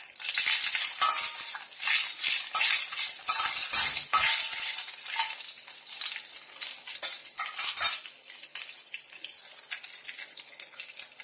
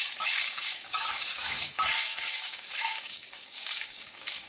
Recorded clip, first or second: first